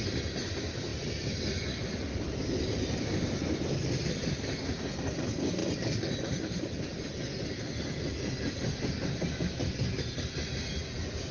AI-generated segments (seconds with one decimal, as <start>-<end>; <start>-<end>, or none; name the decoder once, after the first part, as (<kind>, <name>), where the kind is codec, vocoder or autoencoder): 0.9-4.1 (vocoder, BigVGAN v2)